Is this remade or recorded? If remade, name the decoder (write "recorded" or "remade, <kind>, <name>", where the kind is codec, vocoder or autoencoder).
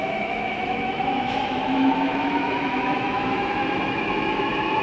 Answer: remade, autoencoder, DAC-VAE